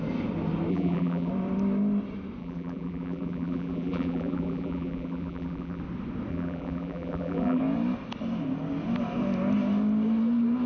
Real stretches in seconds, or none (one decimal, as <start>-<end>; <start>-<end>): 0.0-0.7; 1.3-2.4; 5.8-6.3; 7.6-10.7